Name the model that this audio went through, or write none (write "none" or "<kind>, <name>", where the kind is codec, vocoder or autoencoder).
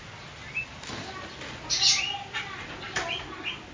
none